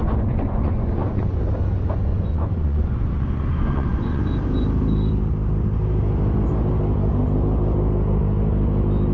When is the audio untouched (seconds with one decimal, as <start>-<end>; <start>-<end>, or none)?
1.4-2.1; 4.2-9.1